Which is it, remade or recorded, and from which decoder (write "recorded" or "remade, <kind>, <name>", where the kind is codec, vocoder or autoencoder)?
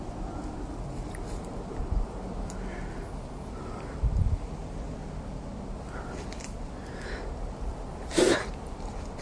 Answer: recorded